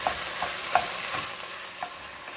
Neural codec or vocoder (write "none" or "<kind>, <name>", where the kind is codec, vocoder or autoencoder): none